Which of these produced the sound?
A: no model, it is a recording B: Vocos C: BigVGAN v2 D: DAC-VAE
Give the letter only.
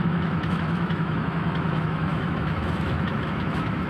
D